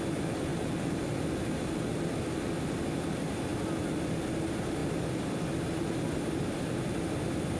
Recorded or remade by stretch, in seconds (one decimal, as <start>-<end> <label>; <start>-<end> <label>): 0.0-7.6 recorded